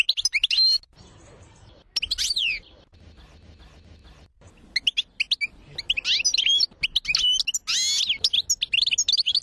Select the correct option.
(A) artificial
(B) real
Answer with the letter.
B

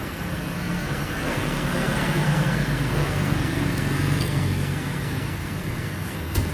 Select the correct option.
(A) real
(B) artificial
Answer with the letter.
B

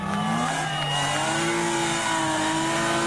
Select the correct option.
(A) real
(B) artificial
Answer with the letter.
A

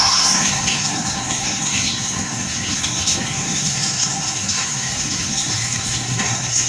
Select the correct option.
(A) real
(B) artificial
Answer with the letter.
B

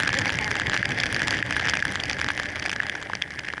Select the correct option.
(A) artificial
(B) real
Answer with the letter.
B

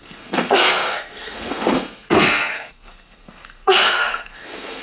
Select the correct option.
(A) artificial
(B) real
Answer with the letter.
A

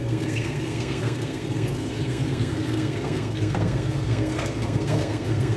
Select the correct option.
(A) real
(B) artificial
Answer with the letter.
B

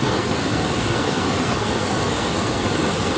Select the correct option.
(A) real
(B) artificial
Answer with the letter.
B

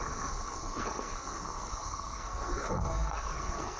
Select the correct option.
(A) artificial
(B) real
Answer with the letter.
A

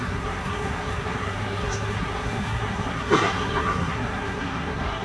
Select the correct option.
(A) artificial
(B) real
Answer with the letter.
A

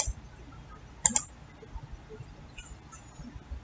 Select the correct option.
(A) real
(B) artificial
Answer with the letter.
A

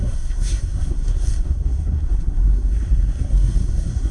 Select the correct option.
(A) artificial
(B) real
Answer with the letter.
A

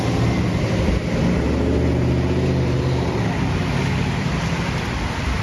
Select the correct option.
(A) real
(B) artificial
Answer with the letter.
A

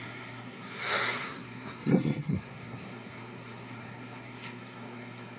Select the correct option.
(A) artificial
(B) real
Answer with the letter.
A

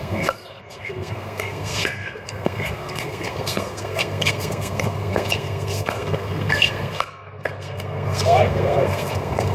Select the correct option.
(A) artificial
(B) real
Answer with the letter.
A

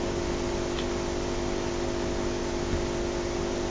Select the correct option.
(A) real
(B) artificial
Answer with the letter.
A